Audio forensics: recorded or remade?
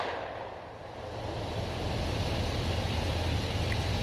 recorded